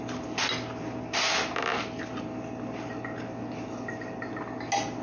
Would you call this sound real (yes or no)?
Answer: yes